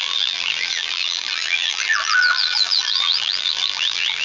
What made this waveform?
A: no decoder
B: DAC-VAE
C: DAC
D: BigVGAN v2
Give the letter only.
D